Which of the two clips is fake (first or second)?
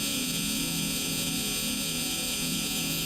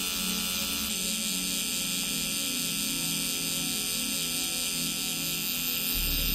first